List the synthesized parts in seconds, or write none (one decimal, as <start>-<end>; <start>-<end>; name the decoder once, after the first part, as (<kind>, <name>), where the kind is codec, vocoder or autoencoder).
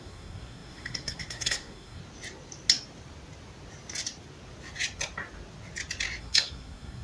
0.0-2.0 (codec, SNAC); 6.2-7.0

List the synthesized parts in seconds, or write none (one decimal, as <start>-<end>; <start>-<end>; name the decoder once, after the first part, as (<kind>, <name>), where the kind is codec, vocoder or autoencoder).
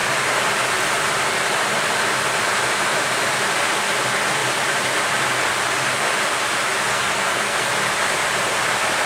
6.9-7.7 (codec, SNAC)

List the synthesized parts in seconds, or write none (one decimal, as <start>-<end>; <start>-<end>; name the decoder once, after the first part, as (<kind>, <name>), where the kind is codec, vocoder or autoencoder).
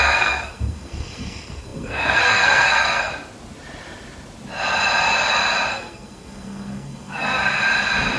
0.0-3.1 (codec, SNAC); 5.7-7.4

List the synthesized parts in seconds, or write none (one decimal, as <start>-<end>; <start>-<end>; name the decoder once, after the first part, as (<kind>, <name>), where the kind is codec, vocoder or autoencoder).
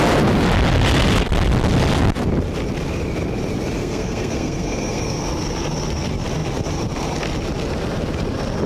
3.8-5.2 (codec, SNAC)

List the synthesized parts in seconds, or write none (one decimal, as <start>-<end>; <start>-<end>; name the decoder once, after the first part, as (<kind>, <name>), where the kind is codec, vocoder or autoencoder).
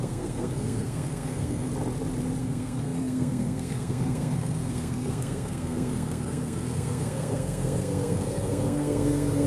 0.0-1.7 (codec, SNAC); 2.4-9.5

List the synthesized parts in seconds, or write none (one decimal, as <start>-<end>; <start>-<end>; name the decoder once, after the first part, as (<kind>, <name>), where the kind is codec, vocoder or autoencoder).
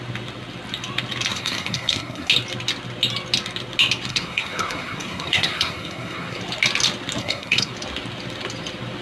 1.3-2.3 (codec, SNAC); 4.1-6.4; 7.2-7.7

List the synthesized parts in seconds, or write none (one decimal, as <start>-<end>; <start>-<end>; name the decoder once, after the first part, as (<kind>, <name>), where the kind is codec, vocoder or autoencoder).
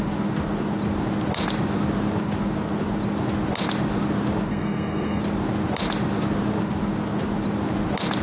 4.5-5.2 (codec, SNAC)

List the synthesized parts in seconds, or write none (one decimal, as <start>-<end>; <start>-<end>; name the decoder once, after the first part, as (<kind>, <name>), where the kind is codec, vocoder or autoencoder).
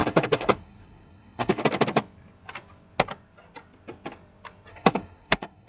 0.0-1.6 (codec, SNAC); 4.7-5.7